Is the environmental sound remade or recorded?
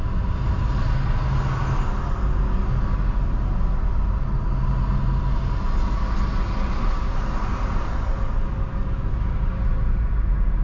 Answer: recorded